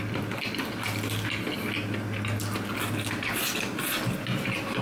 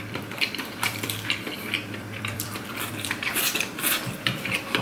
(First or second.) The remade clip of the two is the second